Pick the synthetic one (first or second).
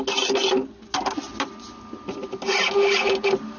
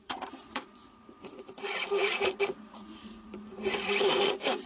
second